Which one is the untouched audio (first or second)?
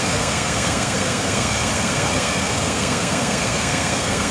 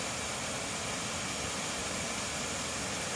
second